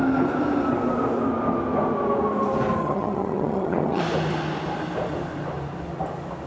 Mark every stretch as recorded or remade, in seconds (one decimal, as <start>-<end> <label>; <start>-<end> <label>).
0.0-2.8 recorded; 2.8-4.0 remade; 4.0-6.5 recorded